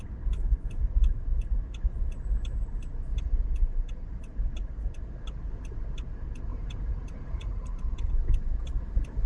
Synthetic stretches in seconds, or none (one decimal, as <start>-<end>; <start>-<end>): 3.1-4.2; 6.5-8.1